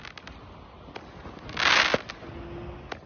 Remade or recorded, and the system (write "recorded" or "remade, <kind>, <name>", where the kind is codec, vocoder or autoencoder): recorded